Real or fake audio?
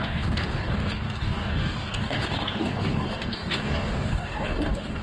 fake